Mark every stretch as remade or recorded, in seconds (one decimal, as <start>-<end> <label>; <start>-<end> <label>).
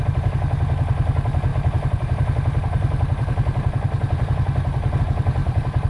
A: 0.0-5.4 recorded; 5.4-5.9 remade